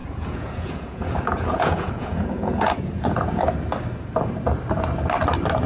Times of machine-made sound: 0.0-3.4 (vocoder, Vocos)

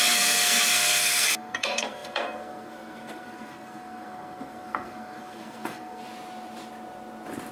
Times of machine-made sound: 0.0-6.0 (codec, SNAC)

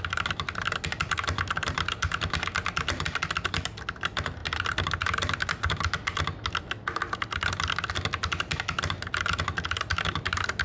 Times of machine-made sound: none